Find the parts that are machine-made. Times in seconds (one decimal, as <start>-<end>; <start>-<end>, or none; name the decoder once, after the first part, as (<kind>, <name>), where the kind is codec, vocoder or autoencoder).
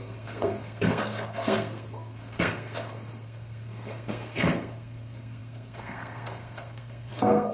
0.0-7.5 (codec, SNAC)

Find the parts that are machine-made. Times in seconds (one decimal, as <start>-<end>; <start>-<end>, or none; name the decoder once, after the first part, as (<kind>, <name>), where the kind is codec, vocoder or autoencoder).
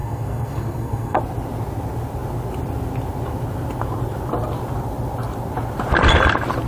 0.0-1.2 (codec, SNAC)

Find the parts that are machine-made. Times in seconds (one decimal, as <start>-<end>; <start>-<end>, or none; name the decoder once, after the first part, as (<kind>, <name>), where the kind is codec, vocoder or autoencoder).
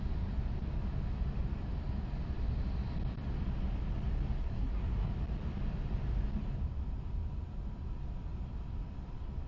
4.4-5.1 (codec, SNAC)